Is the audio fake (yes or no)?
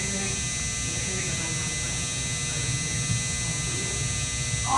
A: no